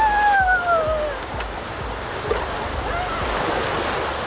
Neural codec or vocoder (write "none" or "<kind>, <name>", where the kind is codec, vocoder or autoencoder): none